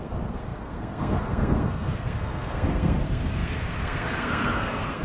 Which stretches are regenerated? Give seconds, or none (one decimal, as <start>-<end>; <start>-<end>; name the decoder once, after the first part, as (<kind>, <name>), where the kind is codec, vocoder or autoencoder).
0.0-5.0 (codec, SNAC)